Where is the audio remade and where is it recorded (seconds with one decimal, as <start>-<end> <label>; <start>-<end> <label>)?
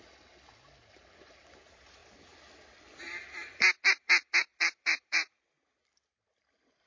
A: 0.0-4.5 recorded; 4.5-5.4 remade; 5.4-6.9 recorded